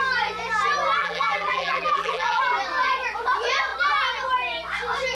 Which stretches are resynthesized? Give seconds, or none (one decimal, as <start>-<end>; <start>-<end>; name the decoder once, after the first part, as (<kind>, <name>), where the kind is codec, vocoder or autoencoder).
1.0-2.4 (vocoder, BigVGAN v2)